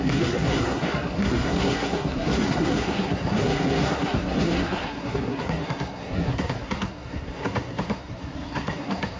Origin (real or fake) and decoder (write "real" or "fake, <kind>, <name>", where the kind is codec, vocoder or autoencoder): fake, codec, SNAC